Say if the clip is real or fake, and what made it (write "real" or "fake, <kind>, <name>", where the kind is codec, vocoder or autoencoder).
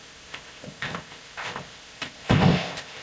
fake, codec, ZipCodec